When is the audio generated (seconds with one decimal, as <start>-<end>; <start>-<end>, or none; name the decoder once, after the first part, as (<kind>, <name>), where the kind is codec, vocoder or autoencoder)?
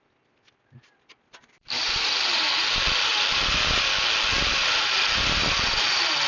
0.0-3.1 (vocoder, BigVGAN v2); 4.8-6.3